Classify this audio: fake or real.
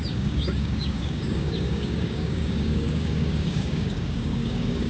fake